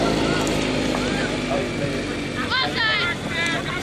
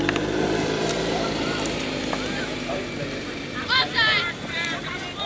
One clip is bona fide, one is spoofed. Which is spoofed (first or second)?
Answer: second